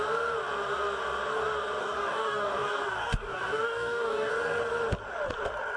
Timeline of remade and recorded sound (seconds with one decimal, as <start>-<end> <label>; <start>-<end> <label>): 0.0-1.8 recorded; 1.8-4.3 remade; 4.3-5.8 recorded